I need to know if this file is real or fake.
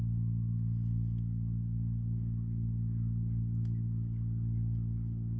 fake